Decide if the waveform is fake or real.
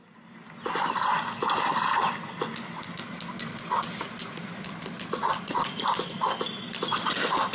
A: real